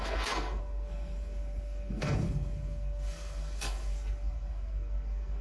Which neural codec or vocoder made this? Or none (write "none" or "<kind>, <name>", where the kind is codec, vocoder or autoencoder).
codec, SNAC